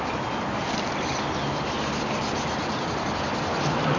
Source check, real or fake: real